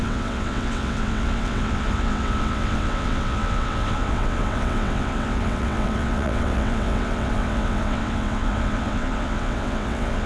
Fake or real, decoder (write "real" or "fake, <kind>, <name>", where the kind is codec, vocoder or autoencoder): fake, vocoder, WaveNeXt